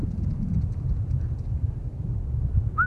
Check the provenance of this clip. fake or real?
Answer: real